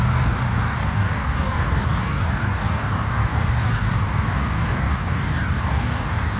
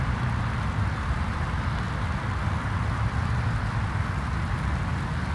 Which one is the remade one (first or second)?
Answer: first